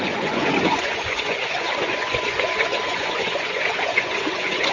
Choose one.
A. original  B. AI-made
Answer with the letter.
B